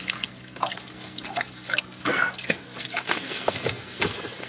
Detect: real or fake fake